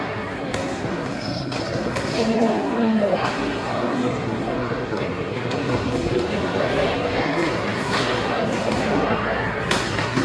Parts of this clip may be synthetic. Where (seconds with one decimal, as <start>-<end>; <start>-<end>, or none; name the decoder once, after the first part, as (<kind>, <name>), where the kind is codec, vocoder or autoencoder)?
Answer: 0.0-10.2 (codec, SNAC)